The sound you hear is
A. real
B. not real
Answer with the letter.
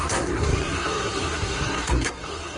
B